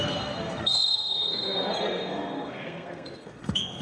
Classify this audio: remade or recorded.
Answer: remade